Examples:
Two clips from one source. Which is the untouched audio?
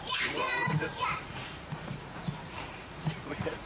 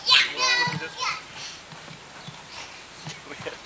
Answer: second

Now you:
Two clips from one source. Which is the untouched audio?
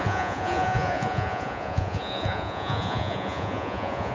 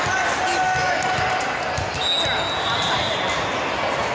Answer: second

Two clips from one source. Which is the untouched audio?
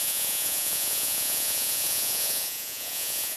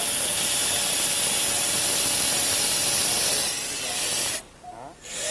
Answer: second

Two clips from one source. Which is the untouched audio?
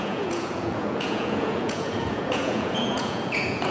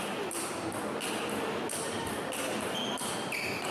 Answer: second